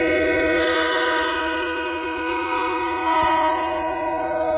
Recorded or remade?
remade